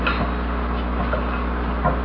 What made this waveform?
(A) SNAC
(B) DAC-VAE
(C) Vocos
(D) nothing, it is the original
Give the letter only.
D